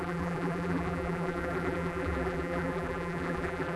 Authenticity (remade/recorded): remade